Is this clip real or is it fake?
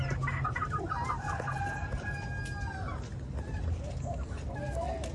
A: real